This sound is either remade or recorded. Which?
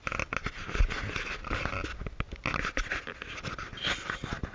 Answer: recorded